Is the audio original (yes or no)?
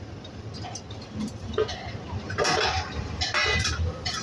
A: yes